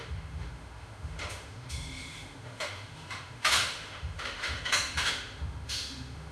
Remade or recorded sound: remade